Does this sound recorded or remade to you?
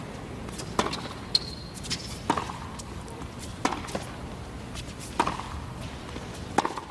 recorded